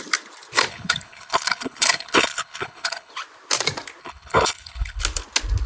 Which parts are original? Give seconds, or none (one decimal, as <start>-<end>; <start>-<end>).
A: 0.0-0.7; 3.1-4.0; 5.0-5.7